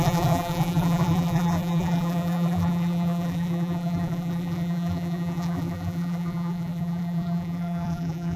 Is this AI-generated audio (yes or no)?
yes